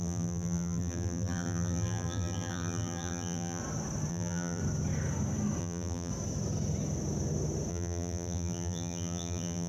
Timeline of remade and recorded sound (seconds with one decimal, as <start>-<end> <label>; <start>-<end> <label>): 0.0-3.6 remade; 3.6-4.1 recorded; 4.1-4.6 remade; 4.6-5.6 recorded; 5.6-6.1 remade; 6.1-7.7 recorded; 7.7-9.7 remade